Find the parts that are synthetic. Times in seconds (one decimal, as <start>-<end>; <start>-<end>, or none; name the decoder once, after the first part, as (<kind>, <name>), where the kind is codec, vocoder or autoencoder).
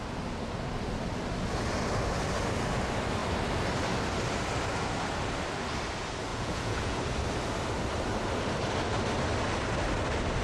6.3-7.0 (vocoder, Vocos)